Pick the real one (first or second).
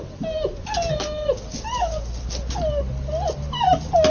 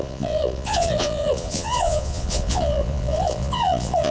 first